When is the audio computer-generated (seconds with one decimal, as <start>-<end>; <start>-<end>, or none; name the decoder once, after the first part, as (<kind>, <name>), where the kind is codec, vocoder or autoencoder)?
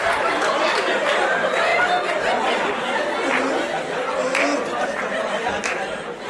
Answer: 0.0-1.7 (vocoder, BigVGAN v2); 5.5-6.3